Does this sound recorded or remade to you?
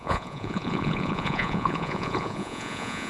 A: remade